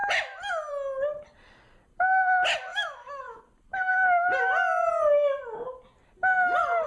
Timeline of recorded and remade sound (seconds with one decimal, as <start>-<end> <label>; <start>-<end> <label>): 0.0-2.7 recorded; 2.7-3.4 remade; 3.4-6.9 recorded